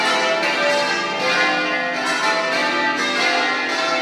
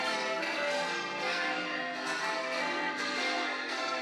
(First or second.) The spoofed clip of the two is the second